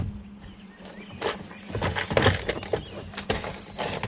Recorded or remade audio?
recorded